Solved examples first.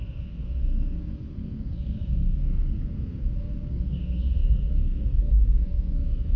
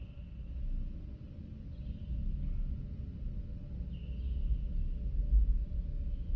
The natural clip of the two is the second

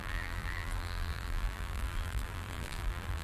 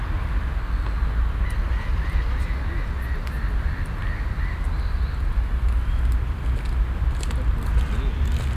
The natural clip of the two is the second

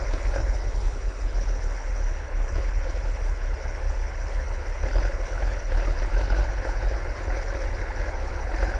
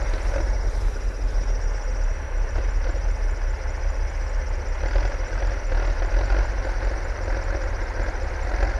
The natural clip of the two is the second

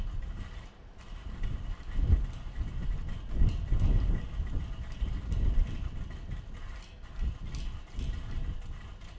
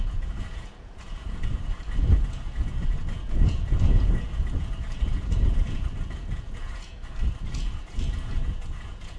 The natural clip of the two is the first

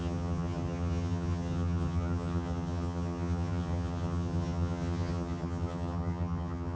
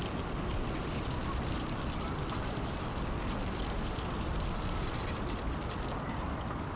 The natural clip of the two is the second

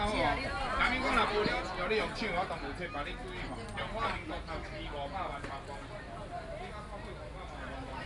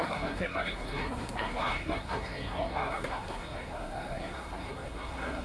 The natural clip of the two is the first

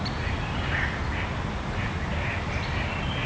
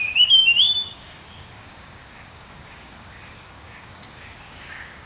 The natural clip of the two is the first